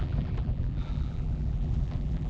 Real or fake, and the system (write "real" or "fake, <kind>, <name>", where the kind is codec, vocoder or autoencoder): fake, vocoder, BigVGAN v2